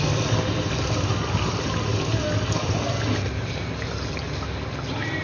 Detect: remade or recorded recorded